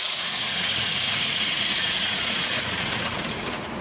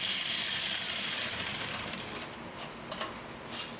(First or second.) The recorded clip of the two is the second